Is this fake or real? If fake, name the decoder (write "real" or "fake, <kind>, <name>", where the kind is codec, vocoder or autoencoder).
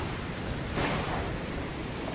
real